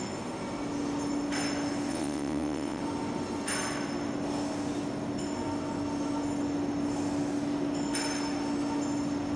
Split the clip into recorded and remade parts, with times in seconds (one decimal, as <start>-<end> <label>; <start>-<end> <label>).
0.0-1.9 recorded; 1.9-2.8 remade; 2.8-9.4 recorded